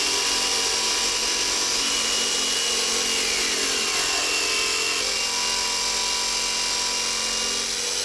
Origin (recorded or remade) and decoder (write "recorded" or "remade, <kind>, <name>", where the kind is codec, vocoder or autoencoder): recorded